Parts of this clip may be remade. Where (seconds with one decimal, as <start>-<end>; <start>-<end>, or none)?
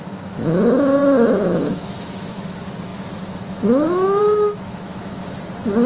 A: 0.0-5.2